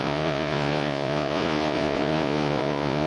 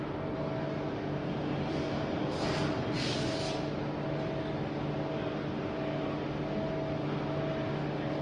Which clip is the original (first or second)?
second